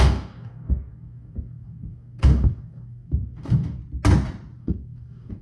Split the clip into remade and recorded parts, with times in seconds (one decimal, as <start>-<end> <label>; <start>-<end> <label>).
0.0-3.8 remade; 3.8-4.6 recorded; 4.6-5.4 remade